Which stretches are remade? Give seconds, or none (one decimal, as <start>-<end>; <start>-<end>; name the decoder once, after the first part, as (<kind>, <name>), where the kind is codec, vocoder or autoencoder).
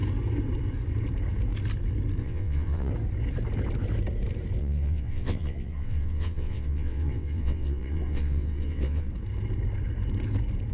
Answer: 2.2-2.9 (vocoder, WaveNeXt); 4.6-9.1